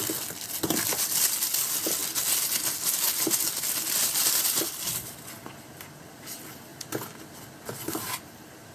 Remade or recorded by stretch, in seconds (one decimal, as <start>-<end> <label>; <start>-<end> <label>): 0.0-2.0 remade; 2.0-2.6 recorded; 2.6-8.7 remade